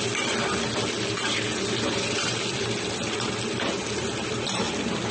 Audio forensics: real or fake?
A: real